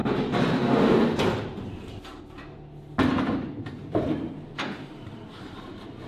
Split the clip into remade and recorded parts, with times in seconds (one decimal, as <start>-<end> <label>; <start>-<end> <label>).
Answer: 0.0-2.2 remade; 2.2-3.8 recorded; 3.8-5.6 remade; 5.6-6.1 recorded